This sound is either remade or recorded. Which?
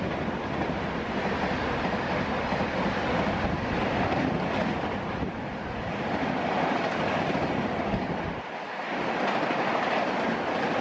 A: recorded